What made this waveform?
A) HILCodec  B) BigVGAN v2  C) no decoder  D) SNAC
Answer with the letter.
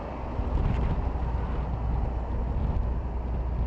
C